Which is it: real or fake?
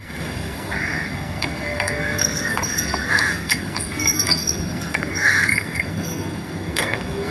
fake